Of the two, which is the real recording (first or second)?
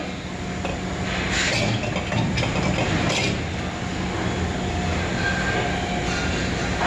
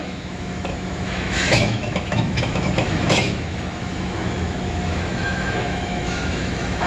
first